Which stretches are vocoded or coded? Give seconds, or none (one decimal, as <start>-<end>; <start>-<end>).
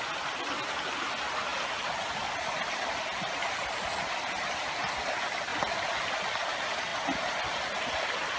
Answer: none